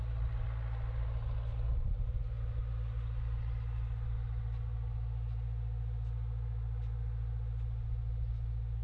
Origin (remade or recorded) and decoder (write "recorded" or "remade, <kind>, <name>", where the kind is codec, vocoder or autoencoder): recorded